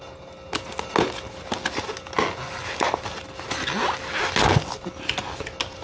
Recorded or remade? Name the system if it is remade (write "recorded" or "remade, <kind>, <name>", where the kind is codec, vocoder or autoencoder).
recorded